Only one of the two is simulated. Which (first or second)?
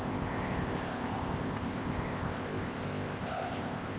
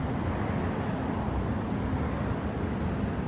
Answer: first